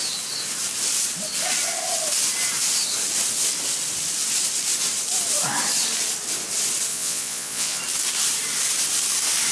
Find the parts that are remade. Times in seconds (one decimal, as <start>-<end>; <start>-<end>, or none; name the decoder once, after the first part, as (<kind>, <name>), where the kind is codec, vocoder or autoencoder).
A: 6.9-7.8 (vocoder, Vocos)